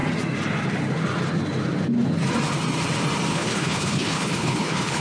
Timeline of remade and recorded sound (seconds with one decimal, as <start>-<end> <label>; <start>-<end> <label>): 0.0-3.3 recorded; 3.3-5.0 remade

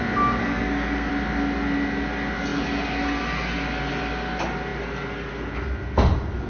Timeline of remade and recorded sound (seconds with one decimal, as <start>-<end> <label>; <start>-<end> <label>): 0.0-0.4 recorded; 0.4-1.1 remade; 1.1-6.5 recorded